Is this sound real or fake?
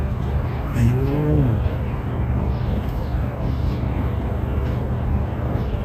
fake